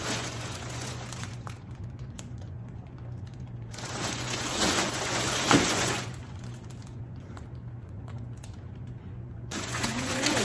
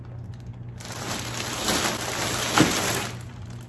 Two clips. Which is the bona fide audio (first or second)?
second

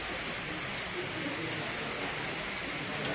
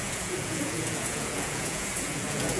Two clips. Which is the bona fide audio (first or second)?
first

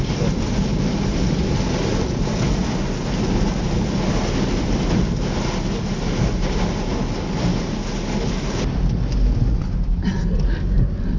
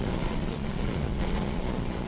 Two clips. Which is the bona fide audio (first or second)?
first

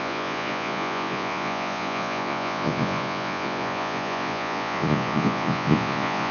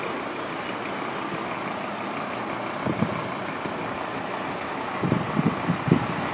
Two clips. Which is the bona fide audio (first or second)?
second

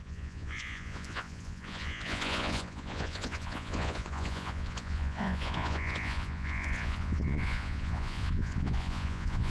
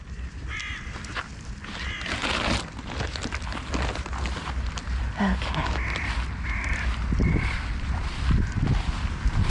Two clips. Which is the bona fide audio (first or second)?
second